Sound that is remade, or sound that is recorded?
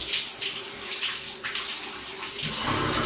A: recorded